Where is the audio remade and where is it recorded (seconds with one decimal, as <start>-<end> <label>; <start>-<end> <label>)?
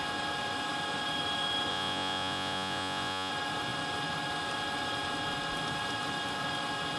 0.0-1.7 recorded; 1.7-3.3 remade; 3.3-7.0 recorded